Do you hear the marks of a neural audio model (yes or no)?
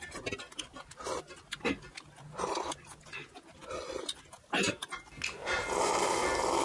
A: no